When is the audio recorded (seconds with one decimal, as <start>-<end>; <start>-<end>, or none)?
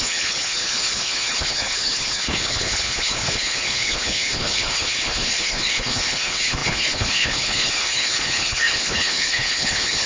none